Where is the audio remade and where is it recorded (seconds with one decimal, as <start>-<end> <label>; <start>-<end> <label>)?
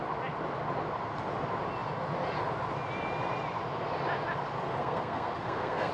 0.0-4.8 recorded; 4.8-5.9 remade